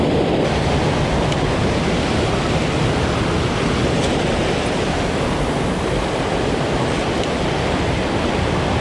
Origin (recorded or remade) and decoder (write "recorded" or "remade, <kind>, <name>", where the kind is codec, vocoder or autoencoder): recorded